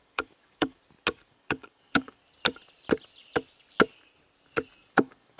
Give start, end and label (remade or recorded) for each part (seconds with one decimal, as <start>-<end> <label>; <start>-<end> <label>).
0.0-0.8 remade; 0.8-1.3 recorded; 1.3-2.2 remade; 2.2-4.9 recorded; 4.9-5.4 remade